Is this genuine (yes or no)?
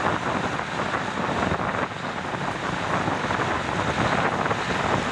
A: yes